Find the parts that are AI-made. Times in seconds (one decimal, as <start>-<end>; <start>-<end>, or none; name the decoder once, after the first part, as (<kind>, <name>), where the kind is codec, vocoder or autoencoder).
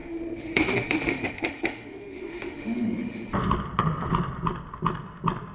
0.0-3.3 (autoencoder, DAC-VAE)